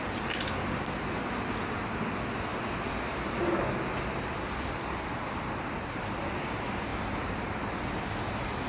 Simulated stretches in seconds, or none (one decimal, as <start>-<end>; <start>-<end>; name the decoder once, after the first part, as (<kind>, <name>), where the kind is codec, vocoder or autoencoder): none